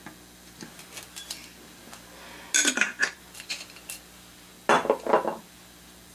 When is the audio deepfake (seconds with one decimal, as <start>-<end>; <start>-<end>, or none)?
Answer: 2.6-3.2